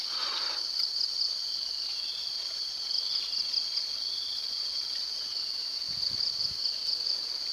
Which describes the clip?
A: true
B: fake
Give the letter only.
A